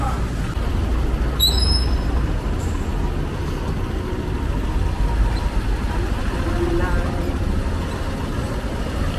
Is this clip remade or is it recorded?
recorded